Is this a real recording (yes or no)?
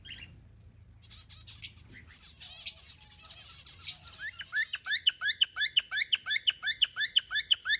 yes